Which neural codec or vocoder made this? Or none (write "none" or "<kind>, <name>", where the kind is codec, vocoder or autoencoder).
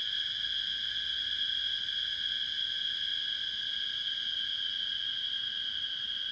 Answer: none